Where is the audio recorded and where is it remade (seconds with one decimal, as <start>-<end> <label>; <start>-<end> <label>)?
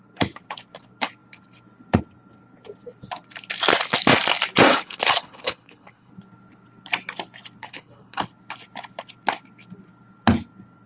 0.0-4.7 recorded; 4.7-6.1 remade; 6.1-7.6 recorded; 7.6-8.3 remade; 8.3-10.9 recorded